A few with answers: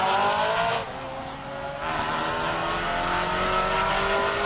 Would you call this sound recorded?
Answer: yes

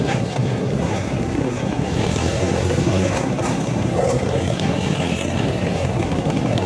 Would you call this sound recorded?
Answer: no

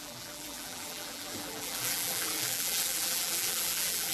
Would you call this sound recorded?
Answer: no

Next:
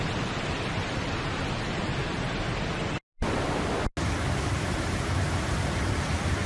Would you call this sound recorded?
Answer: yes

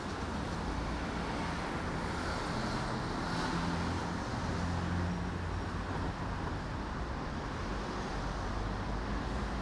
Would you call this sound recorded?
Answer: yes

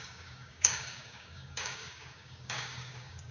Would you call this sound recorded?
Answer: no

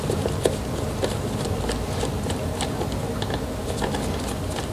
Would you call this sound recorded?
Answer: yes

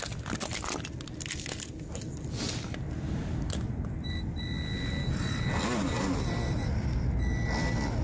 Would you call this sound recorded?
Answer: yes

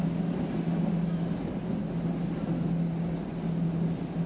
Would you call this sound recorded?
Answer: yes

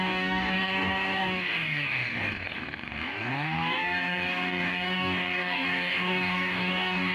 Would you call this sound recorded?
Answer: no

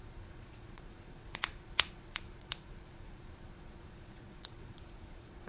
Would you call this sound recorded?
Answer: no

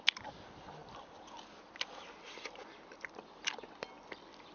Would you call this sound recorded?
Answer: yes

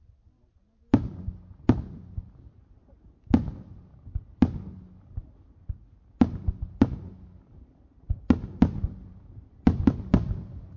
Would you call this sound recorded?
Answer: yes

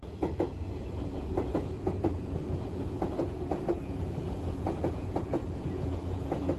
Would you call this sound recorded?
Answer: no